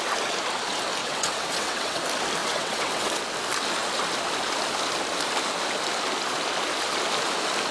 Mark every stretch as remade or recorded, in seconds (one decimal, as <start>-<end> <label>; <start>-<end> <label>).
0.0-1.0 recorded; 1.0-2.0 remade; 2.0-2.4 recorded; 2.4-3.2 remade; 3.2-7.7 recorded